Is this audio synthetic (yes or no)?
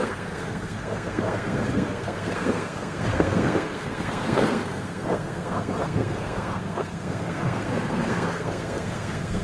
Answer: yes